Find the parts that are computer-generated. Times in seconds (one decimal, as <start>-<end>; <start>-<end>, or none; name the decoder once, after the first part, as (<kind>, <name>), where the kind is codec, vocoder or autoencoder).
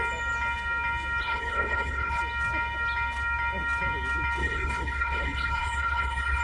1.2-2.2 (codec, HILCodec); 4.4-6.4